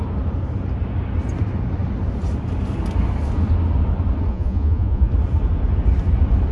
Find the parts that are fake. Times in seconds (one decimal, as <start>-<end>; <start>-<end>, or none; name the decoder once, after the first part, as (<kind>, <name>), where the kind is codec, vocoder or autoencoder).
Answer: 4.3-5.1 (vocoder, Vocos)